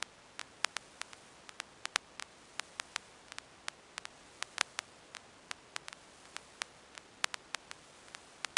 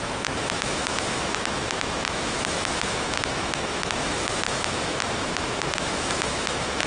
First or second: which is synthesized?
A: second